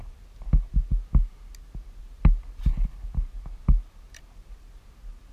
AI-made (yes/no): no